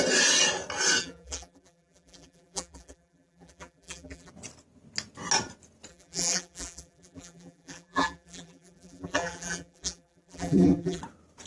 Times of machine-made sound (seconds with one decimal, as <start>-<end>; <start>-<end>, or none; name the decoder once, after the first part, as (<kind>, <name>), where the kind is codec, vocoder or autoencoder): 1.0-4.3 (vocoder, BigVGAN v2); 5.9-11.0